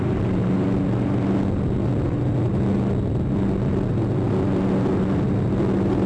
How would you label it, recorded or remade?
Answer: recorded